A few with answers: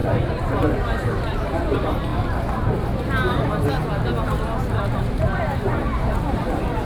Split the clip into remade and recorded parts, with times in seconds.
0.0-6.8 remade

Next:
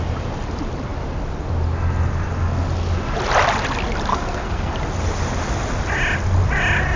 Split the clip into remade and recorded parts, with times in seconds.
0.0-4.1 recorded; 4.1-4.7 remade; 4.7-7.0 recorded

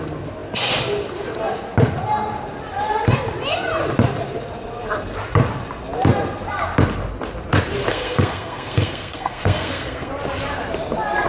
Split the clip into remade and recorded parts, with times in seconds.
0.0-7.9 recorded; 7.9-10.1 remade; 10.1-11.3 recorded

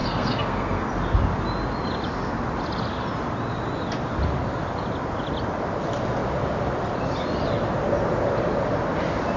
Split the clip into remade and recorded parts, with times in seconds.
0.0-0.9 remade; 0.9-9.4 recorded

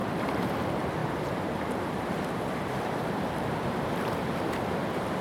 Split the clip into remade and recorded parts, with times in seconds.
0.0-0.6 remade; 0.6-1.0 recorded; 1.0-4.1 remade; 4.1-5.2 recorded